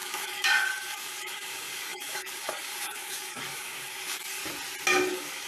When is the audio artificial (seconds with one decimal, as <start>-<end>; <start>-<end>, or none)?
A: 0.0-4.4; 5.1-5.5